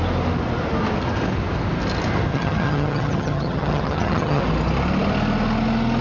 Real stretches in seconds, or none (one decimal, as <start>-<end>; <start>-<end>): 0.0-2.3; 4.4-6.0

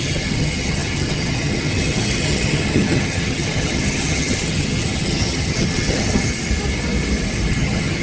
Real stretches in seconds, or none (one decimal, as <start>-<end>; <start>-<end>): 6.3-7.5

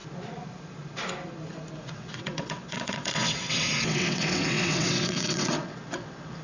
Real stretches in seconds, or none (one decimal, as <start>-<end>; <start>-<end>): 0.0-1.8

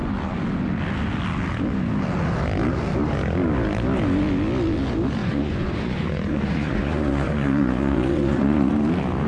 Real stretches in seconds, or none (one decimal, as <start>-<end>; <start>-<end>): 0.0-5.2; 8.7-9.3

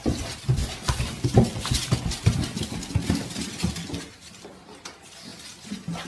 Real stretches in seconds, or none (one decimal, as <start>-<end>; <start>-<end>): 0.6-3.4; 5.3-6.1

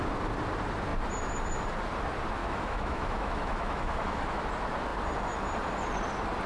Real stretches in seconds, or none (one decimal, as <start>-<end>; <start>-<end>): 0.0-2.4; 4.4-6.5

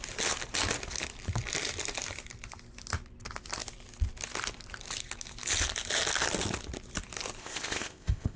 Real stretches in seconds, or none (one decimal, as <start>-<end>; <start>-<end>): 0.0-7.4

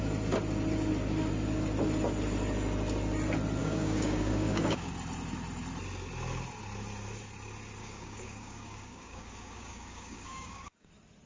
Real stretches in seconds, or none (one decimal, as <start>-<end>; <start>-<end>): 0.0-3.6; 4.9-7.8; 10.9-11.3